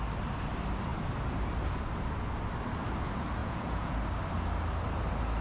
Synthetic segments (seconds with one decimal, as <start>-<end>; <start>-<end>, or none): 3.4-4.0